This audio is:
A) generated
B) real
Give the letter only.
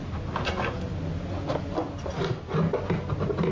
B